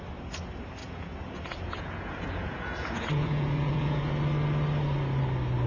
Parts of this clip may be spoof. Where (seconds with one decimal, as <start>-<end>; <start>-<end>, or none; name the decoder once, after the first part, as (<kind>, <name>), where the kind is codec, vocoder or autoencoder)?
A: 0.8-4.1 (vocoder, Vocos)